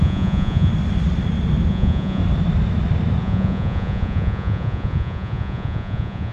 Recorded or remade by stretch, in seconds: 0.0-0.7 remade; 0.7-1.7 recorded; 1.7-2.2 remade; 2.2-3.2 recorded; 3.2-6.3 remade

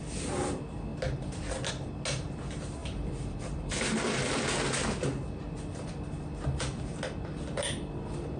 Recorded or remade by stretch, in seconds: 0.0-0.9 recorded; 0.9-1.7 remade; 1.7-2.8 recorded; 2.8-4.3 remade; 4.3-8.4 recorded